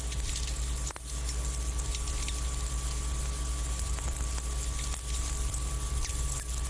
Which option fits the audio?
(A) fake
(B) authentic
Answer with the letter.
B